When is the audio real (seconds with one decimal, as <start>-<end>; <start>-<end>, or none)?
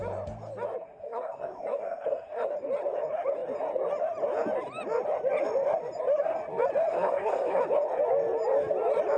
0.0-0.8; 2.5-6.9; 7.6-9.2